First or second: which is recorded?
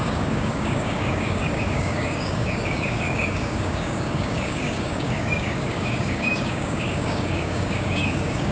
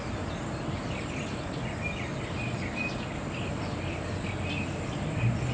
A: second